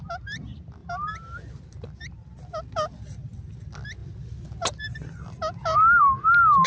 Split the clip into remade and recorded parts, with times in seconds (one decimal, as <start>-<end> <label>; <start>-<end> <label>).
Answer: 0.0-6.7 recorded